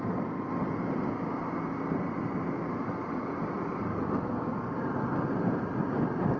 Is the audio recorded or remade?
recorded